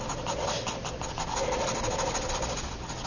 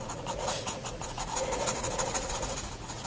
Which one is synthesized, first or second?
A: second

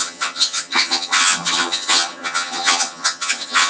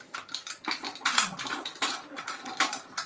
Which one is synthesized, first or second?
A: first